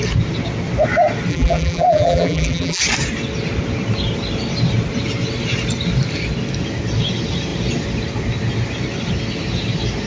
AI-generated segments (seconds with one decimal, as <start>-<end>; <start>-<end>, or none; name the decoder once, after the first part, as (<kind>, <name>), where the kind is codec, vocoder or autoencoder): 1.3-2.8 (vocoder, BigVGAN v2)